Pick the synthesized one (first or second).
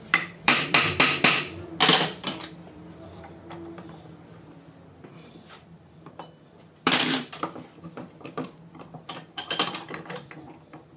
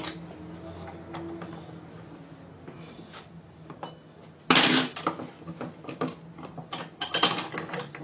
first